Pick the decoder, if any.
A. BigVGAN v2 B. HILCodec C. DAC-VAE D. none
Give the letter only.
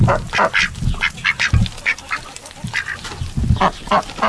D